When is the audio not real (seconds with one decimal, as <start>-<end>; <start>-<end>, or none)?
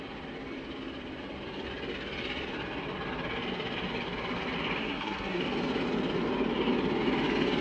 4.8-5.4